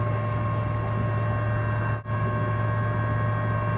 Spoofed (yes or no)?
no